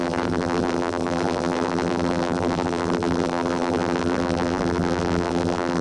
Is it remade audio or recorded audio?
remade